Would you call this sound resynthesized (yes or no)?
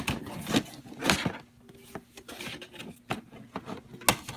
no